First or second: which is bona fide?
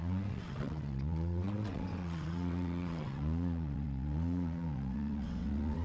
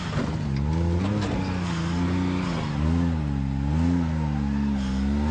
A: second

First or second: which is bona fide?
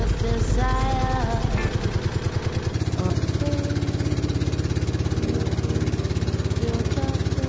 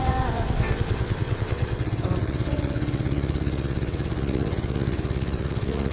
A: first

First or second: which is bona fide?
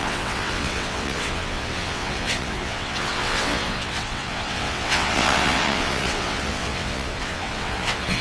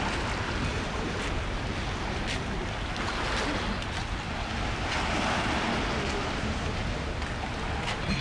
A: second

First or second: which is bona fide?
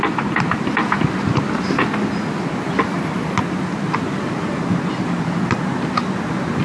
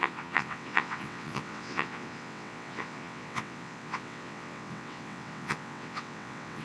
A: first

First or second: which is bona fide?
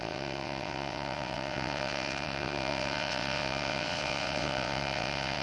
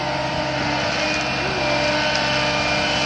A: second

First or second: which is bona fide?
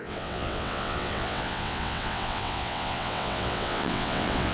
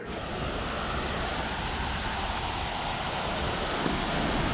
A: second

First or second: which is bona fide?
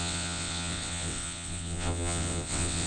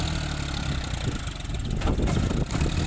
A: second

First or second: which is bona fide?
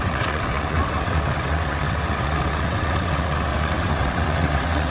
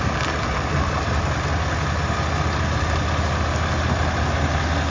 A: second